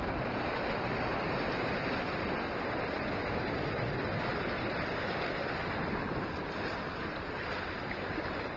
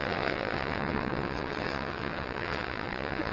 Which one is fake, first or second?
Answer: second